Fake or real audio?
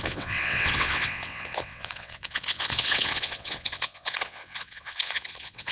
fake